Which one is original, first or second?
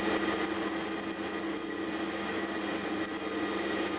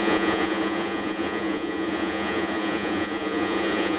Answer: first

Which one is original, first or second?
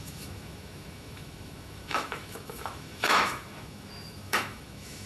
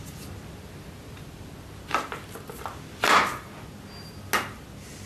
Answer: second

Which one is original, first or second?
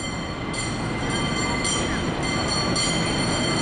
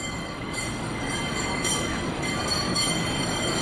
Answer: first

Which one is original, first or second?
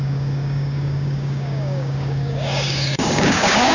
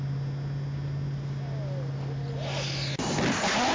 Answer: second